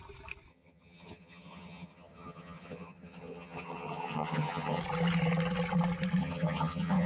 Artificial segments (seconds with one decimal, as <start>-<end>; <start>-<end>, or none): 0.5-4.8; 6.2-7.1

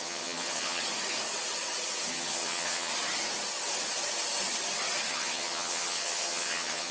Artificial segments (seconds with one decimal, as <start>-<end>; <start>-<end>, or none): 0.0-0.8; 2.1-2.9; 5.1-6.9

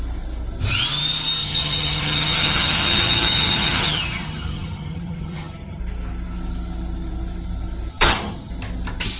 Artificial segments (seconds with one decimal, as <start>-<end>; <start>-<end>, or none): 1.4-5.8; 7.9-8.5

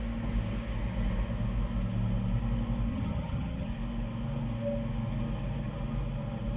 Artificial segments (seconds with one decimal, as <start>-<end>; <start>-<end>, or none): 2.9-3.7

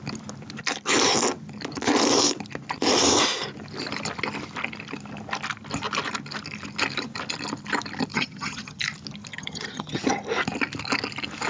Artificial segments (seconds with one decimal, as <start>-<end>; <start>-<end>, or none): 8.1-8.8; 9.3-10.2